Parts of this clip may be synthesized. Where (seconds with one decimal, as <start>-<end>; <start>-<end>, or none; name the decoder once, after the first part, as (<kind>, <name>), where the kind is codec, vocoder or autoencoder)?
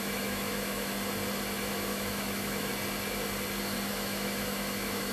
0.0-0.9 (autoencoder, DAC-VAE); 1.7-2.7; 3.9-5.1